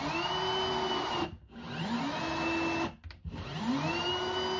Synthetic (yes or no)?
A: no